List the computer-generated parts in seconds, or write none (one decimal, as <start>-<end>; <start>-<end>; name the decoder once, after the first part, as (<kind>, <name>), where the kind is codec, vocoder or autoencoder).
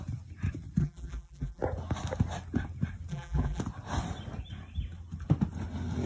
0.8-1.6 (vocoder, BigVGAN v2); 3.1-3.6